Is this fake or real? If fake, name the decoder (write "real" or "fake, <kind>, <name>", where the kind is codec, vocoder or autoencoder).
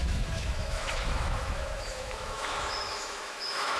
fake, autoencoder, DAC-VAE